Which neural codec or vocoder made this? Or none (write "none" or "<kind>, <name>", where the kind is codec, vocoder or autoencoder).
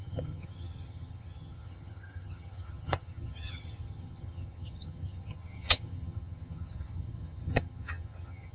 vocoder, HiFi-GAN